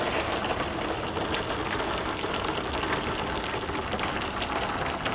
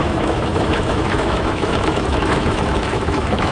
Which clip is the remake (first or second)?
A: second